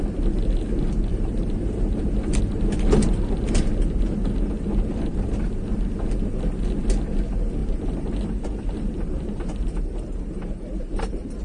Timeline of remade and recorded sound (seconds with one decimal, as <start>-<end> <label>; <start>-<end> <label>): 0.0-1.1 recorded; 1.1-2.0 remade; 2.0-7.6 recorded; 7.6-11.4 remade